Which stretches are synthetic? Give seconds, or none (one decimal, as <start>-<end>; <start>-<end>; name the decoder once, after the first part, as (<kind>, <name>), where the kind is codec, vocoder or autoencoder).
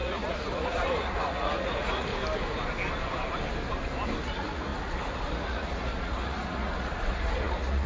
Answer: 0.0-2.1 (vocoder, Vocos); 4.2-7.9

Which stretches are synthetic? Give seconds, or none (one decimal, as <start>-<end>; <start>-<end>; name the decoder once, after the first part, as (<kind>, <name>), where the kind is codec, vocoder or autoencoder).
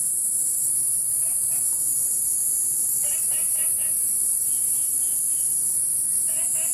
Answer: 1.9-3.7 (vocoder, BigVGAN v2); 4.2-5.0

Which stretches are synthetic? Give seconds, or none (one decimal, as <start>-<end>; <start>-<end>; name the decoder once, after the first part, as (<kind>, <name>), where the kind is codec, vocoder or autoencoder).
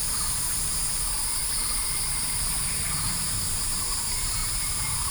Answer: 0.0-1.4 (vocoder, BigVGAN v2); 2.7-5.1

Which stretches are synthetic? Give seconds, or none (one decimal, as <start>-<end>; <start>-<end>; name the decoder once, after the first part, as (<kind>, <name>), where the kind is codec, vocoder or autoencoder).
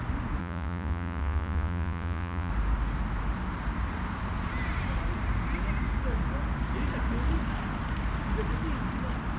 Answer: 0.4-2.5 (vocoder, Vocos)